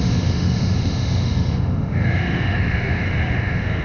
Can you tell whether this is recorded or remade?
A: remade